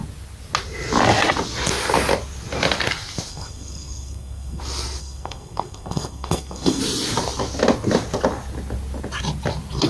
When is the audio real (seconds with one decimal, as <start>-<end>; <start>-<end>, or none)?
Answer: 0.0-3.3; 4.6-5.0; 6.8-9.9